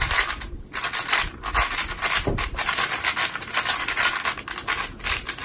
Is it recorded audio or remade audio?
recorded